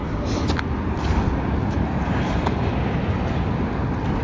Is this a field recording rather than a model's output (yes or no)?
yes